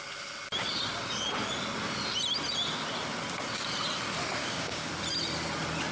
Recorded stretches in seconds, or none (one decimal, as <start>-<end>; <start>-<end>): 0.0-4.4; 4.9-5.9